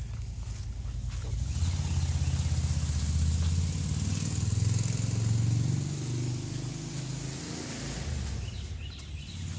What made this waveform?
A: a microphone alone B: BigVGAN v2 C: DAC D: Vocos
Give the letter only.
A